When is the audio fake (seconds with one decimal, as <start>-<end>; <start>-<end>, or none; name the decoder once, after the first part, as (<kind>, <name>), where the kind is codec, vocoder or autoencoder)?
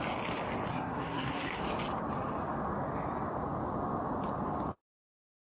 0.7-1.6 (codec, SNAC)